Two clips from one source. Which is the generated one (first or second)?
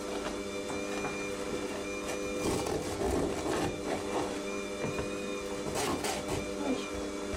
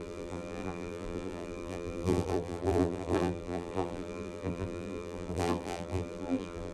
second